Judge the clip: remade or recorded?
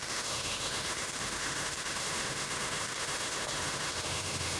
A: remade